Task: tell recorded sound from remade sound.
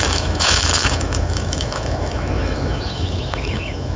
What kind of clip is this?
remade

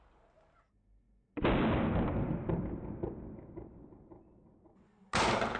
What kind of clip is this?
recorded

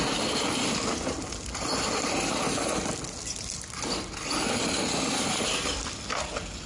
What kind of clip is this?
recorded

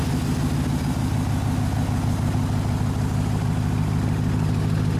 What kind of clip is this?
recorded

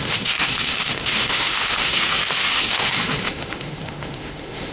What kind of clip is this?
remade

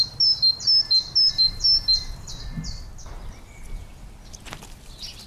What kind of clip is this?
recorded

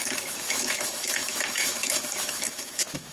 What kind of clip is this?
remade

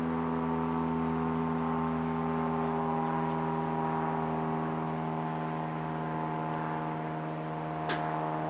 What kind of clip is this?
recorded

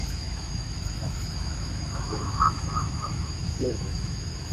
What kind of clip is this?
remade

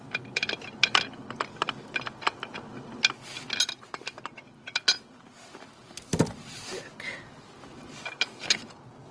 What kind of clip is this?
recorded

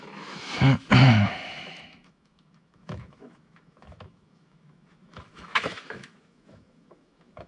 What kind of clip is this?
remade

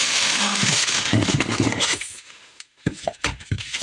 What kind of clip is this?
remade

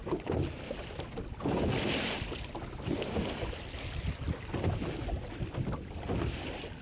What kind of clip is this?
recorded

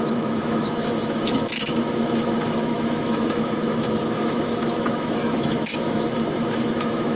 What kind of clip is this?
remade